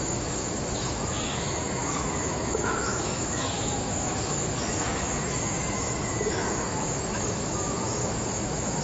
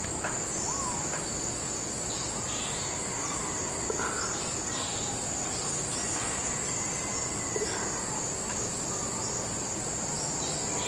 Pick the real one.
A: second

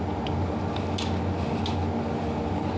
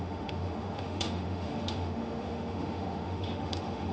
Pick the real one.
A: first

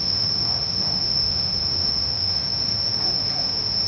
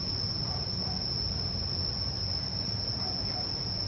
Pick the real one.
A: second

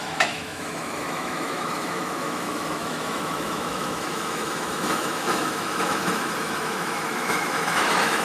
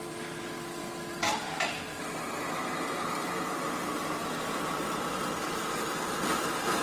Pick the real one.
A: second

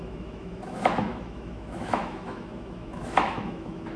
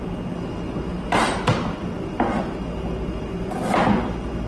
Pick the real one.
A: second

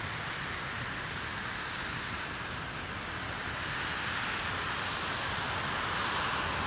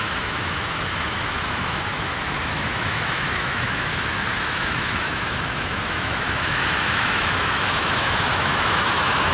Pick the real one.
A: first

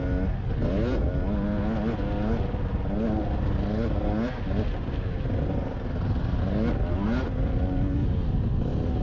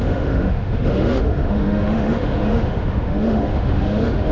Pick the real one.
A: first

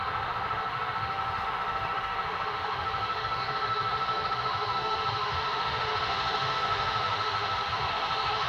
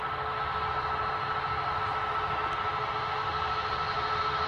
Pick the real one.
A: second